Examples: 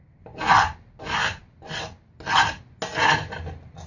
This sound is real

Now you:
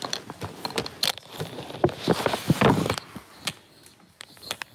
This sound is real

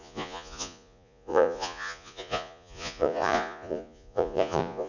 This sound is fake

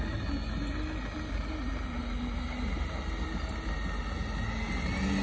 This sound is real